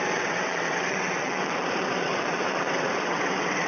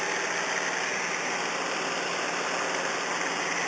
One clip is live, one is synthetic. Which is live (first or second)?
second